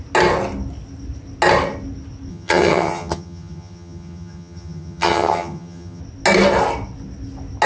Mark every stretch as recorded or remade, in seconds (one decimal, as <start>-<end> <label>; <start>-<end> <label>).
0.0-2.3 recorded; 2.3-6.0 remade; 6.0-7.7 recorded